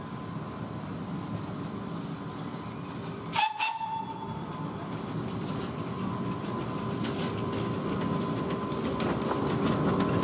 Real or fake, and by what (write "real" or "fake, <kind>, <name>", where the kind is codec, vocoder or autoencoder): real